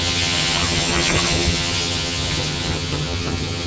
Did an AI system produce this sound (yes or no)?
yes